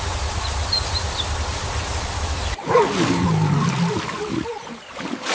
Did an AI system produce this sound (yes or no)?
no